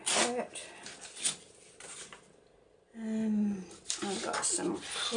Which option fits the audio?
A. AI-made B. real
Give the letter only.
B